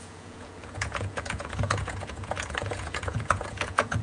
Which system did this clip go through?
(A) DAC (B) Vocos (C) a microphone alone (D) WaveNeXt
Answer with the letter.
B